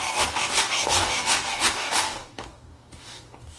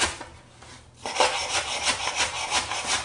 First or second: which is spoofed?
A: first